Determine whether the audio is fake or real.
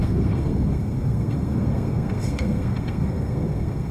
fake